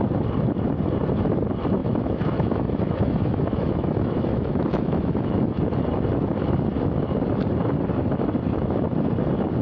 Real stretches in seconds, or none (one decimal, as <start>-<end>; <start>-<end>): 0.0-1.8; 5.6-9.6

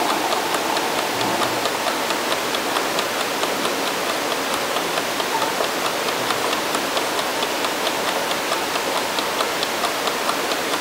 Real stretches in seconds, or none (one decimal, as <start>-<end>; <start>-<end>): 0.0-10.8

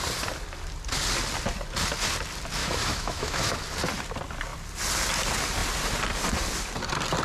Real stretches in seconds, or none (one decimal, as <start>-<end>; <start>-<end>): 0.0-2.6; 3.4-7.2